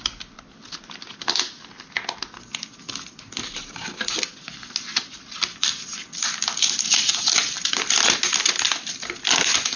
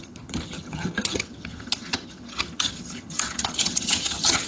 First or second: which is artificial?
second